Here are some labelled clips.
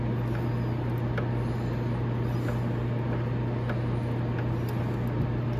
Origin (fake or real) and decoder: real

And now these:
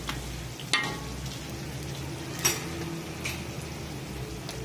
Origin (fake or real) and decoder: real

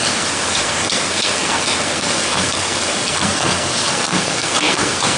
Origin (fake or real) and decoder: fake, codec, SNAC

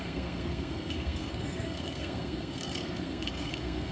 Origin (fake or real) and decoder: fake, codec, SNAC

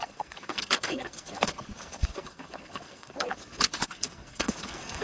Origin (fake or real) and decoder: fake, codec, SNAC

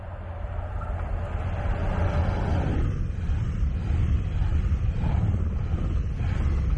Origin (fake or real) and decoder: real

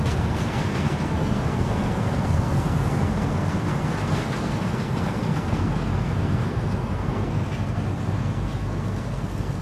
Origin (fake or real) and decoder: fake, codec, SNAC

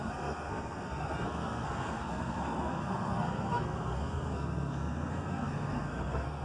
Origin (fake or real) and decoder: fake, codec, SNAC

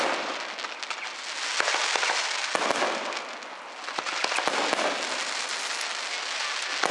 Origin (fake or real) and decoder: real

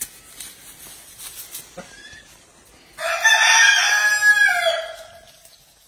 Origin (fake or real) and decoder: real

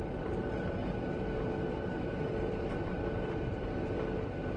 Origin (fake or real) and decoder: real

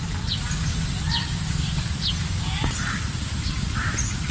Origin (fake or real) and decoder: real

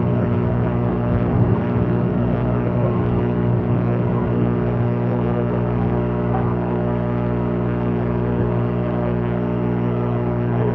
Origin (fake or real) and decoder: fake, codec, SNAC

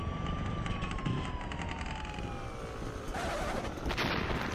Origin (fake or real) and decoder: real